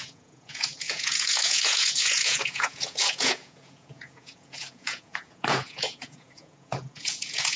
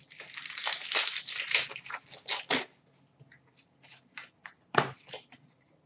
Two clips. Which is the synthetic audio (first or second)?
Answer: first